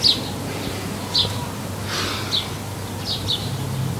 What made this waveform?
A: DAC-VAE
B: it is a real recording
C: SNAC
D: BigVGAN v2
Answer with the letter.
B